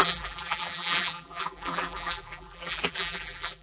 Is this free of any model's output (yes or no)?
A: no